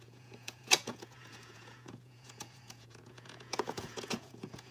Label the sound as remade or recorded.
remade